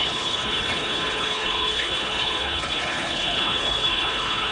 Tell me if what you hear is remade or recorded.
remade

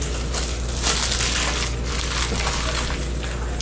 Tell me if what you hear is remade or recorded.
recorded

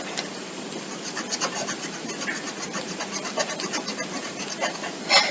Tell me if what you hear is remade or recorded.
recorded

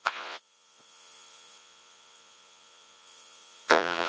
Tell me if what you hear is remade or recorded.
remade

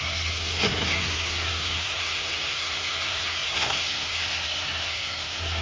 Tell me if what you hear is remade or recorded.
remade